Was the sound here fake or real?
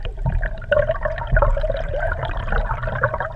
fake